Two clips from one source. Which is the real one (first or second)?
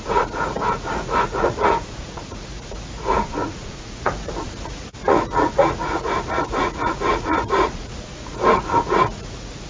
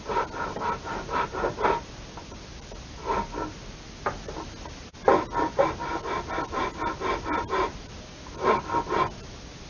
second